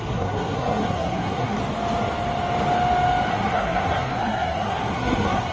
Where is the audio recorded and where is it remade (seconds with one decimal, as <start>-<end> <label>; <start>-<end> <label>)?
0.0-1.6 remade; 1.6-3.3 recorded; 3.3-5.5 remade